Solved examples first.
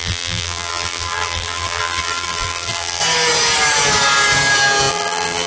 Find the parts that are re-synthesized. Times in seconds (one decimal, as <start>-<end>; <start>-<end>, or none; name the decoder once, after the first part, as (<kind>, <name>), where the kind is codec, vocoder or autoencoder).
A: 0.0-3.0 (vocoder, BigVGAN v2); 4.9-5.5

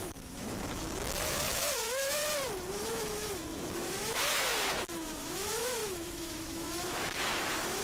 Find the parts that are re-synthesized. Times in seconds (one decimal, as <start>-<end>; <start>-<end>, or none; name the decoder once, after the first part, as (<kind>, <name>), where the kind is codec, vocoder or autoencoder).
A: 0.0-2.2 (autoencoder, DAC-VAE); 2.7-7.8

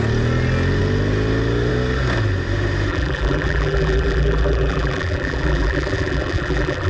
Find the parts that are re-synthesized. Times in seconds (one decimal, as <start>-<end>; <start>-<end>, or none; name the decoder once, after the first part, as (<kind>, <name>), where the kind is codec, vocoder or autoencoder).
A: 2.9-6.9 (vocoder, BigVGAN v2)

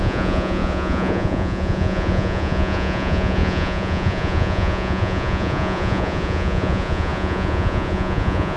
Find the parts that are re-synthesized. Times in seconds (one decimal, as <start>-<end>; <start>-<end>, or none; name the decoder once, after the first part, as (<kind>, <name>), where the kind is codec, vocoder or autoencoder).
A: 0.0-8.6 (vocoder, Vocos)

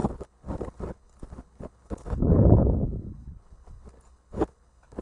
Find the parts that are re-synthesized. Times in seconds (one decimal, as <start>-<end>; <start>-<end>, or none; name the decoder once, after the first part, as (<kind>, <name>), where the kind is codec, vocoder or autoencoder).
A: 0.0-5.0 (codec, HILCodec)

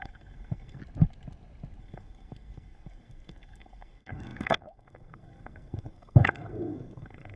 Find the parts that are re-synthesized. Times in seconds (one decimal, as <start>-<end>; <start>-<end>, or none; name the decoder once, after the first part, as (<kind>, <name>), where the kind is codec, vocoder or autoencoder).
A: 0.0-0.8 (codec, SNAC); 1.8-7.4

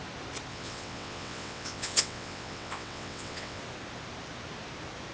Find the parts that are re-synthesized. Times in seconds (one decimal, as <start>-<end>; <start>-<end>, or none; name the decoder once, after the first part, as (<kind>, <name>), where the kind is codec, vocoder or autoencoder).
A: 0.5-3.6 (vocoder, WaveNeXt)